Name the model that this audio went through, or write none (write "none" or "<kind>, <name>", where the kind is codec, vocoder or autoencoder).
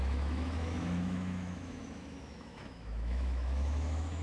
autoencoder, DAC-VAE